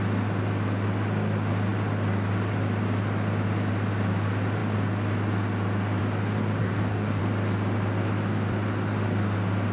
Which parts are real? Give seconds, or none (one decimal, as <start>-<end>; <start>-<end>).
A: 0.0-6.6; 7.2-9.7

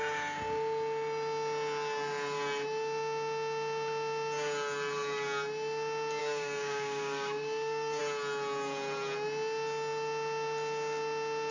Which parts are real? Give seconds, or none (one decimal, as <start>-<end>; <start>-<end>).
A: 0.0-6.2; 8.0-11.5

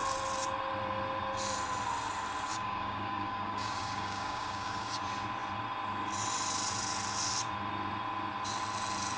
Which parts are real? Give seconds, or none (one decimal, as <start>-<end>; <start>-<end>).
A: 0.0-2.5; 5.0-9.2

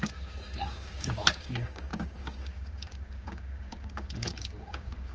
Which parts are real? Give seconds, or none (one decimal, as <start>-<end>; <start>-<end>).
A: none

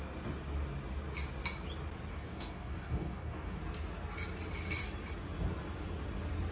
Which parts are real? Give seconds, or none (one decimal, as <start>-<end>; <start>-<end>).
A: 0.0-2.1; 3.6-6.5

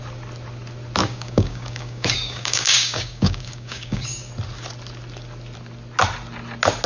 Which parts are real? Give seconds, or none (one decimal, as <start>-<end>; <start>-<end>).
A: 0.0-1.0; 4.3-6.9